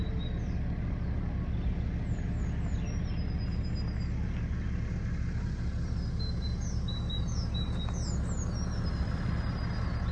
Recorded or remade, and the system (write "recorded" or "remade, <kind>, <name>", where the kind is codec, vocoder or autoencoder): recorded